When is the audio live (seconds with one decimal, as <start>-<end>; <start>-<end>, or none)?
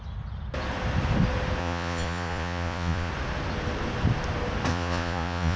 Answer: 0.0-1.6; 3.1-4.7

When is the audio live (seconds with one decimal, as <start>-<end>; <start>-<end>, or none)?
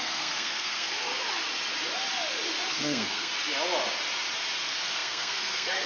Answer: 1.1-2.7; 3.3-4.6